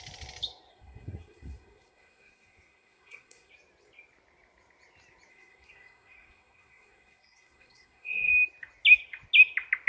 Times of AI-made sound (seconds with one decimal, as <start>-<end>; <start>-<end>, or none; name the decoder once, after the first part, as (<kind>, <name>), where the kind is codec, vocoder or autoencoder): 0.7-3.5 (codec, SNAC); 5.3-8.3

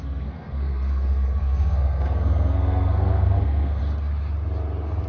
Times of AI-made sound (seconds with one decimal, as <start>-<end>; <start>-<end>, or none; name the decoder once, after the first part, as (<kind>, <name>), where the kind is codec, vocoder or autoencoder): 0.0-3.8 (codec, SNAC)

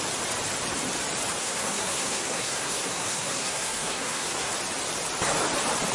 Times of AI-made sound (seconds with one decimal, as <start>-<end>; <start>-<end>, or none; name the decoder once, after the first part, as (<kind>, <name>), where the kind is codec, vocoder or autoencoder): 1.4-4.5 (codec, SNAC)